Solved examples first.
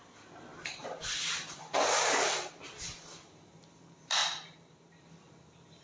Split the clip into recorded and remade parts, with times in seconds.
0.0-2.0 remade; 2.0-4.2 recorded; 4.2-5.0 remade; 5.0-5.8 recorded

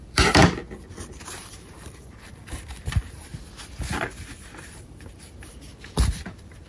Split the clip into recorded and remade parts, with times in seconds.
0.0-0.4 remade; 0.4-1.0 recorded; 1.0-3.3 remade; 3.3-4.0 recorded; 4.0-6.7 remade

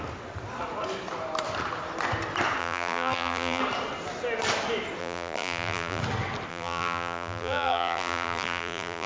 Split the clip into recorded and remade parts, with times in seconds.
0.0-2.6 recorded; 2.6-3.6 remade; 3.6-5.0 recorded; 5.0-6.0 remade; 6.0-6.5 recorded; 6.5-9.1 remade

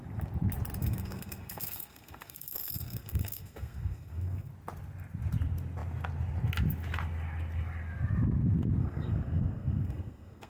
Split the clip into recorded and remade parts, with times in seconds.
0.0-0.8 recorded; 0.8-4.5 remade; 4.5-8.8 recorded; 8.8-10.5 remade